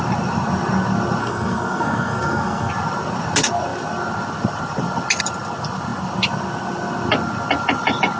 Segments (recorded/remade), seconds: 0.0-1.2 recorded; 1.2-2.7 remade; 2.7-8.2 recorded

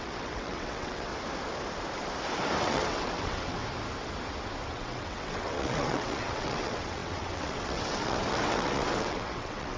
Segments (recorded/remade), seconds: 0.0-1.1 remade; 1.1-2.6 recorded; 2.6-3.6 remade; 3.6-4.7 recorded; 4.7-9.8 remade